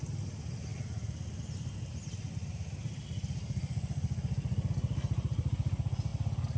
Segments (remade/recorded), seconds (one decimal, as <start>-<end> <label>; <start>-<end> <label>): 0.0-6.6 recorded